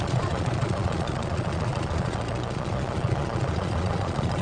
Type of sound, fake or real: fake